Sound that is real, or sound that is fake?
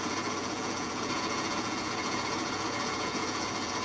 fake